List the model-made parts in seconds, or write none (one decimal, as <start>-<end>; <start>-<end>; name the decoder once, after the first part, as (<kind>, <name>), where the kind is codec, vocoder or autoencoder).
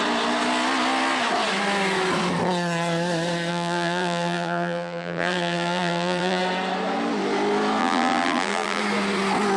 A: 3.5-6.4 (vocoder, BigVGAN v2); 7.8-8.8